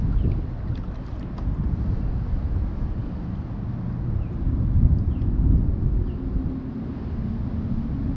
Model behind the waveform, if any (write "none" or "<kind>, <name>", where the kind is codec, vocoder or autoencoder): none